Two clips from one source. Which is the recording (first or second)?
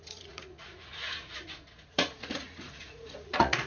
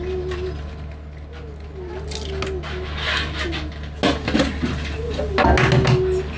second